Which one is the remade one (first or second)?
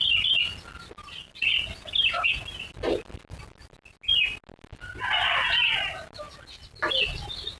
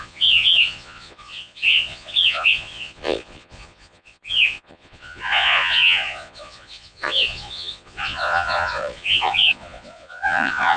second